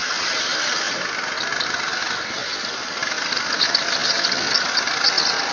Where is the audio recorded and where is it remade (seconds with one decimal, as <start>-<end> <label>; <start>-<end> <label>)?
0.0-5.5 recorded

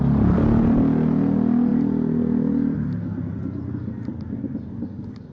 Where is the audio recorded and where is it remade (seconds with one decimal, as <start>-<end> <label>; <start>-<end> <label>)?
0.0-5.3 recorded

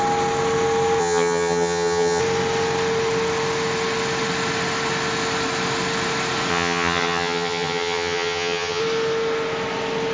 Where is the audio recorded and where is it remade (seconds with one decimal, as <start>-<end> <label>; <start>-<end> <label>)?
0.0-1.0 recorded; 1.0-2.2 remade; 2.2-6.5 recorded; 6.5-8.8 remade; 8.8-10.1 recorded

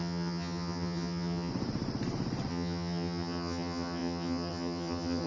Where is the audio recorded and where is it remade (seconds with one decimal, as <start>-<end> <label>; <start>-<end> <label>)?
0.0-1.5 remade; 1.5-2.5 recorded; 2.5-5.3 remade